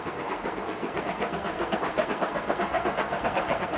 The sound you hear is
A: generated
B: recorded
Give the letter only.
A